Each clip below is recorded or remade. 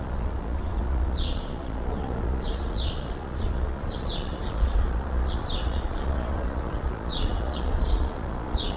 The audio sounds remade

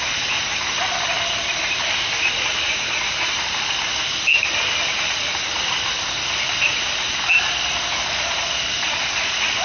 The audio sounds recorded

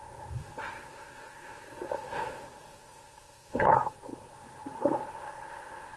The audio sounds remade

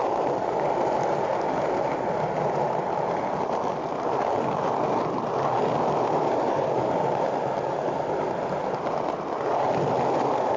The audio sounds recorded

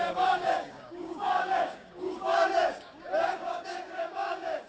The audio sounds remade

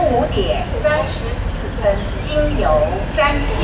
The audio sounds recorded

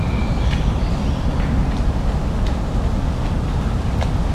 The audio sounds recorded